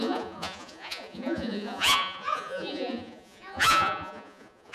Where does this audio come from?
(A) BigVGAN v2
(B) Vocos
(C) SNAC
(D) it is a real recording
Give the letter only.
B